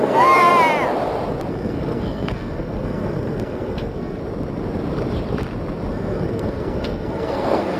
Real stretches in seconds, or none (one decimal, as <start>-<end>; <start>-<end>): 0.5-1.5; 4.2-5.9

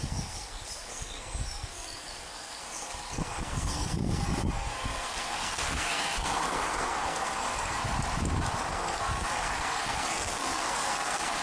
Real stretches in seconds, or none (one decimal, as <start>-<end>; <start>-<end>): 7.8-8.7